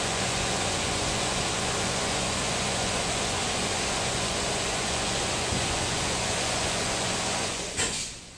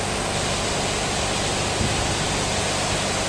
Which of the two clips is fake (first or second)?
first